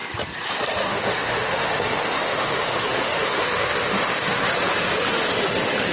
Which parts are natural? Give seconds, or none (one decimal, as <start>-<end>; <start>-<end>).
0.0-0.9; 4.4-5.9